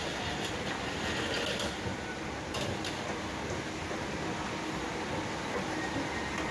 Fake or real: real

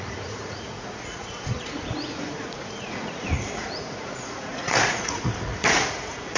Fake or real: fake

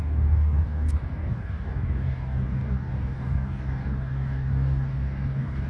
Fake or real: fake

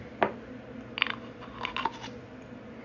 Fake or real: real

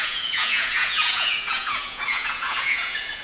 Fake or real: fake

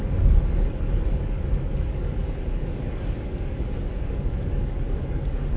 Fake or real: fake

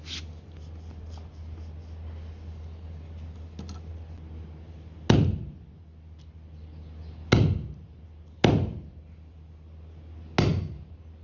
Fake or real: real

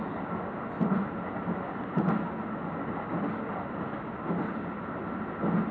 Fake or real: real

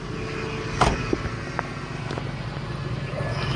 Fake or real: real